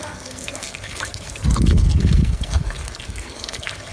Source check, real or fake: fake